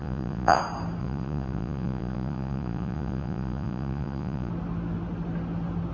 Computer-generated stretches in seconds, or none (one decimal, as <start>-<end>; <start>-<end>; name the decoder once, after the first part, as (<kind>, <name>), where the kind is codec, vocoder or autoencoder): 0.0-0.6 (vocoder, Vocos); 1.0-4.5